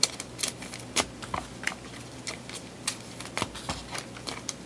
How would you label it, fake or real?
real